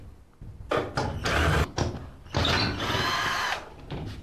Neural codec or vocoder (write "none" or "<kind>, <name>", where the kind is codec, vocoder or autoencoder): none